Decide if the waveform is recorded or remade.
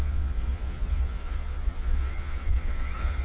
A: remade